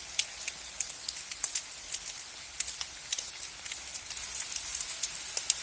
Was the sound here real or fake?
real